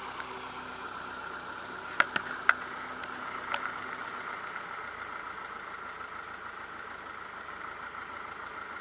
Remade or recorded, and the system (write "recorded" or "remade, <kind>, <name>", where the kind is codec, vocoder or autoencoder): recorded